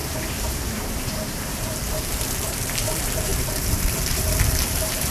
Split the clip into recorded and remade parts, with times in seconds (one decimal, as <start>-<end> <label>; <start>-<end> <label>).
0.0-5.1 remade